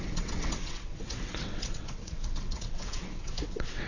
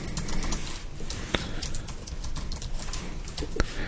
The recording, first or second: second